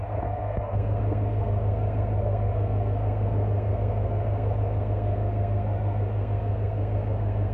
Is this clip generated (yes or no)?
yes